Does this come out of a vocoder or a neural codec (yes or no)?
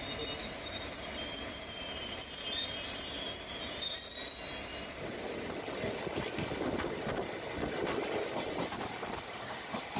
no